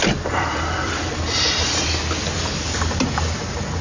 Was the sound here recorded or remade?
recorded